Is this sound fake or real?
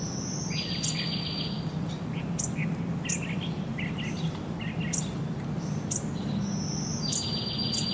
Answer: real